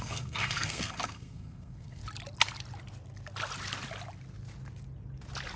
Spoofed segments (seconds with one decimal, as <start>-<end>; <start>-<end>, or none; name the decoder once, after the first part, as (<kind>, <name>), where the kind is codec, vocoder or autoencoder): 0.0-2.0 (codec, SNAC)